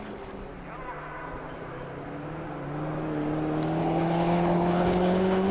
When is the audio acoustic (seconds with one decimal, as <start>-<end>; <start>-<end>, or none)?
0.5-3.8